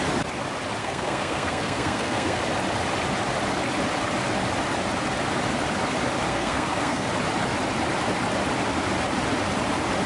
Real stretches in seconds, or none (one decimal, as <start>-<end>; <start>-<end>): 0.0-0.8; 2.4-6.3; 7.1-10.1